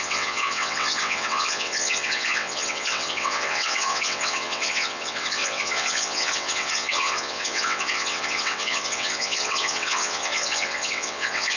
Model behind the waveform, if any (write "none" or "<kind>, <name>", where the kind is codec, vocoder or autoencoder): vocoder, WaveNeXt